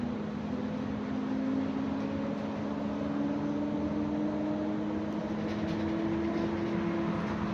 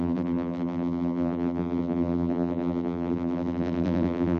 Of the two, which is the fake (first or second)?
second